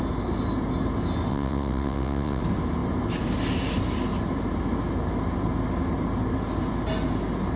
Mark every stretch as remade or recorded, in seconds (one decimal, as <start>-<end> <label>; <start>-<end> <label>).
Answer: 0.0-1.3 recorded; 1.3-2.4 remade; 2.4-7.6 recorded